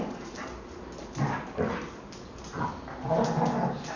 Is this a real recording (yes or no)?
yes